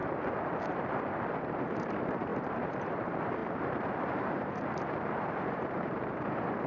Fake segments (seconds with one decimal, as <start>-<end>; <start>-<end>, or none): 0.0-6.7